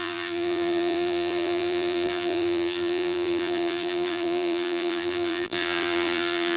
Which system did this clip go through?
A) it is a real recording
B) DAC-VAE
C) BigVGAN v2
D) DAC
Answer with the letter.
C